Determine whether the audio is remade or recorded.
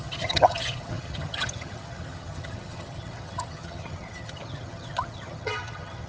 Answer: remade